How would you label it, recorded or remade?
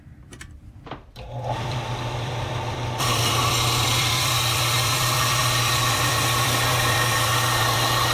remade